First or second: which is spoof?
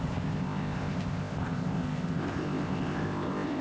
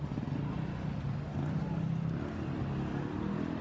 first